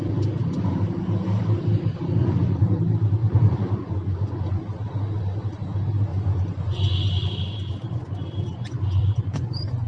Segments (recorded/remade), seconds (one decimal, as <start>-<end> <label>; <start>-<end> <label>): 0.0-2.2 recorded; 2.2-2.8 remade; 2.8-3.2 recorded; 3.2-4.6 remade; 4.6-6.1 recorded; 6.1-9.9 remade